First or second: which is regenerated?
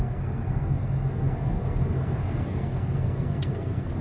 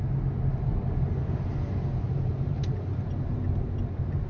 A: first